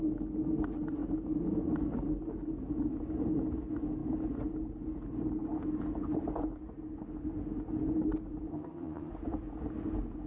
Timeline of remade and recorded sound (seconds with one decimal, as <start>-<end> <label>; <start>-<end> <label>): 0.0-8.5 recorded; 8.5-9.1 remade; 9.1-10.3 recorded